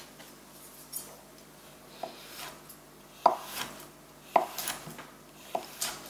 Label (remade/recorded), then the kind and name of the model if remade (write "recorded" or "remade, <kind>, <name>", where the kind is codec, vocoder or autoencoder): recorded